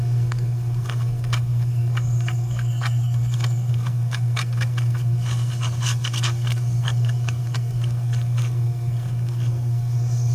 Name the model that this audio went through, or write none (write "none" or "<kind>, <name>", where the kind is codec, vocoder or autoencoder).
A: codec, SNAC